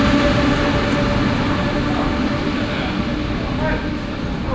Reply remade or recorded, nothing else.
recorded